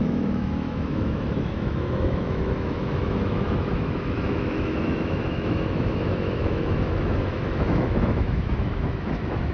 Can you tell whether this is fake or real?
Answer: fake